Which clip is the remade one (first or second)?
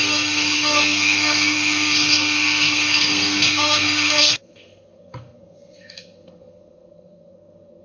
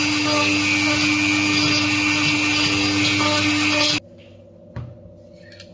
first